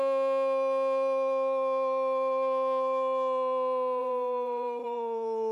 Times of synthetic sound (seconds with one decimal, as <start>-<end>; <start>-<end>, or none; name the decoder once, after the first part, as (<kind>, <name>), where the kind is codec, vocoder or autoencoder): 4.0-5.5 (vocoder, BigVGAN v2)